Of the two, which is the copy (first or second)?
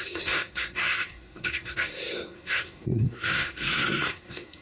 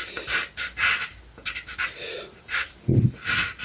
first